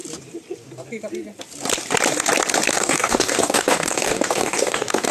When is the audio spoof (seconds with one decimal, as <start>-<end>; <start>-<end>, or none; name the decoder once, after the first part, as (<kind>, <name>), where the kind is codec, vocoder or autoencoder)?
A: 2.7-5.1 (codec, DAC)